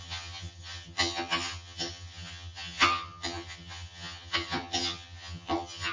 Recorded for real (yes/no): no